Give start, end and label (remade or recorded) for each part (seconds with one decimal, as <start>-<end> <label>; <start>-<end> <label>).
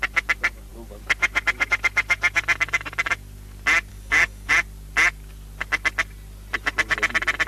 0.0-3.9 recorded; 3.9-4.5 remade; 4.5-7.5 recorded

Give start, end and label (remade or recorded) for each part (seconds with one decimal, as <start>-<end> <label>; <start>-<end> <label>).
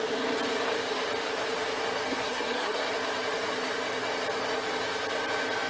0.0-2.1 recorded; 2.1-2.9 remade; 2.9-5.7 recorded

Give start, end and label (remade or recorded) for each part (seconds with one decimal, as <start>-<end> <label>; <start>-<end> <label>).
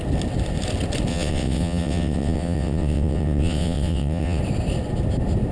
0.0-1.1 recorded; 1.1-4.4 remade; 4.4-5.5 recorded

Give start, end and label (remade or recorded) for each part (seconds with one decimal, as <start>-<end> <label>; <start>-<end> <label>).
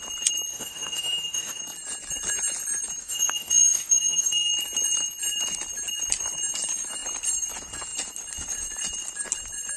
0.0-0.5 recorded; 0.5-1.6 remade; 1.6-3.0 recorded; 3.0-4.5 remade; 4.5-9.8 recorded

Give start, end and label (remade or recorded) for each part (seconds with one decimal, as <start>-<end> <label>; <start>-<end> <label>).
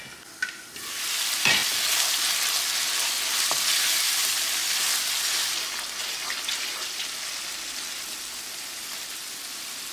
0.0-9.9 recorded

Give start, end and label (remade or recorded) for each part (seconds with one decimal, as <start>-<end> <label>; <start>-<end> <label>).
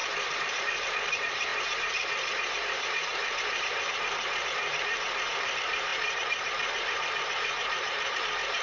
0.0-8.6 remade